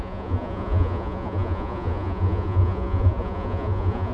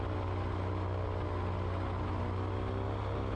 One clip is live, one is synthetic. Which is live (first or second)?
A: second